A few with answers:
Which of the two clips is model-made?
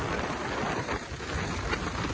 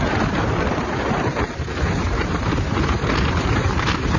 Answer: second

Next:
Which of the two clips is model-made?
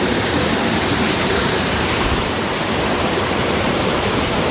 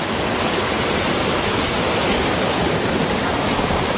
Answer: first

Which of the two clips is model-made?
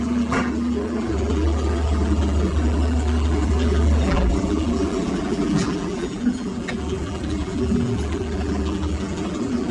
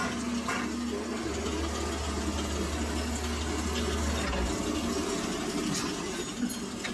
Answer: first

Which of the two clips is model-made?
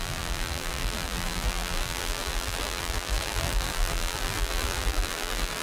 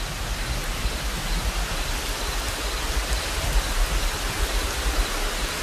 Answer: first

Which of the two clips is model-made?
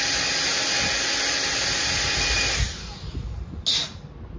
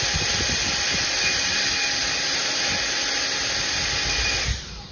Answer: second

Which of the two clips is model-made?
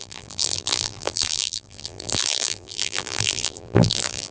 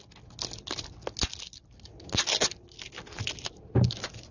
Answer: first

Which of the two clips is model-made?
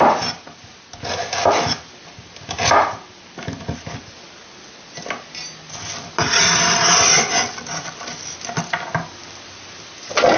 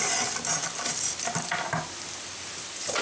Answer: second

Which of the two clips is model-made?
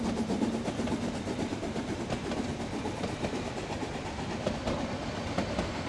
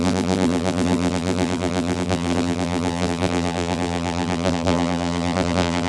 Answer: second